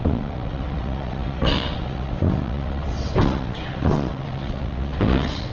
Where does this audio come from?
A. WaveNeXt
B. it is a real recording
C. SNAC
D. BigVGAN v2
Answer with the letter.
A